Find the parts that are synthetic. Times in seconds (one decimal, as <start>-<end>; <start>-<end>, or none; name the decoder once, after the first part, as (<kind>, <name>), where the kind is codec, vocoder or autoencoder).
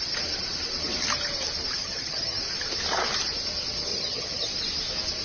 1.8-2.4 (vocoder, HiFi-GAN); 3.9-4.5